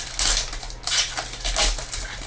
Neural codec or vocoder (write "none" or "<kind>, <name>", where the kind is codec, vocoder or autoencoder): none